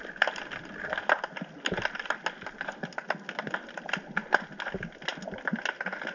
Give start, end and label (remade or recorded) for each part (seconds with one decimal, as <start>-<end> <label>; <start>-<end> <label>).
0.0-6.1 recorded